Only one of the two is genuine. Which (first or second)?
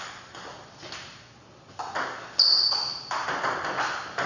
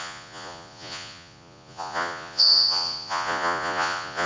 first